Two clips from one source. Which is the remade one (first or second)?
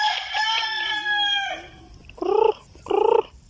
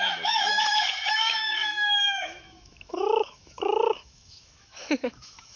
second